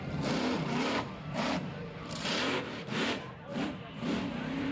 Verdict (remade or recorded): remade